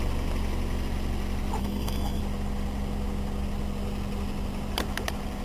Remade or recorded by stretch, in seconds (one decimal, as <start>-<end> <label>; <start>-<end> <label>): 0.0-1.6 recorded; 1.6-2.2 remade; 2.2-5.4 recorded

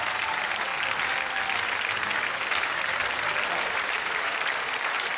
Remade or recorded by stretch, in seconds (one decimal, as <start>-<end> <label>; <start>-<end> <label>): 0.0-0.7 remade; 0.7-3.6 recorded; 3.6-5.2 remade

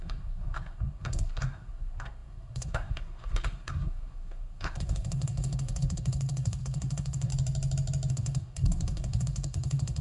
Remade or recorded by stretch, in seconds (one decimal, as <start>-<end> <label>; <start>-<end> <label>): 0.0-7.3 remade; 7.3-8.1 recorded; 8.1-10.0 remade

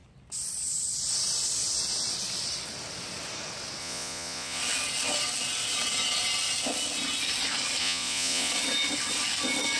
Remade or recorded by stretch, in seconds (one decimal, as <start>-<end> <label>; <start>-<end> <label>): 0.0-3.8 recorded; 3.8-4.6 remade; 4.6-7.8 recorded; 7.8-8.5 remade; 8.5-9.8 recorded

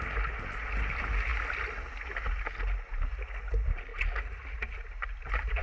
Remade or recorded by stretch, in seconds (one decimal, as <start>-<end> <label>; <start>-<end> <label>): 0.0-5.6 recorded